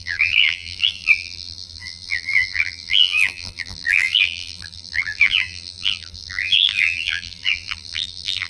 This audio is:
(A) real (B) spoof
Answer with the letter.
B